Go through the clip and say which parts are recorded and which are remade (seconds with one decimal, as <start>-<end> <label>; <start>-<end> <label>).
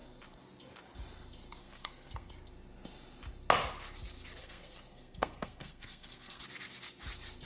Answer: 0.0-1.6 recorded; 1.6-2.3 remade; 2.3-4.4 recorded; 4.4-6.4 remade; 6.4-7.5 recorded